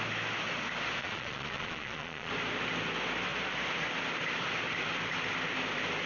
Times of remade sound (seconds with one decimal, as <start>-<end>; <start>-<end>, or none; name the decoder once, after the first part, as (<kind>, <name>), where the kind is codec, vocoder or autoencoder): 1.0-2.3 (vocoder, Vocos)